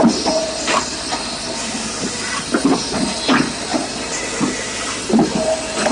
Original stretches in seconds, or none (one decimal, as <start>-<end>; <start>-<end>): 0.0-3.7; 4.3-5.9